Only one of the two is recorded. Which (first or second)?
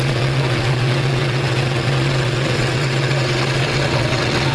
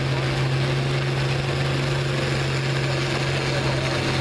second